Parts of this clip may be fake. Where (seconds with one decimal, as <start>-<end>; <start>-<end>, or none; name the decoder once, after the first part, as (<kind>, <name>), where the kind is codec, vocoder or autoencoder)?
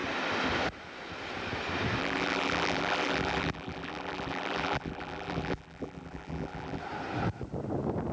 2.0-6.8 (vocoder, BigVGAN v2)